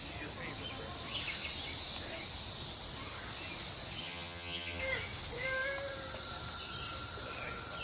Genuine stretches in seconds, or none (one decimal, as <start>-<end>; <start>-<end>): 0.0-4.0; 4.8-7.8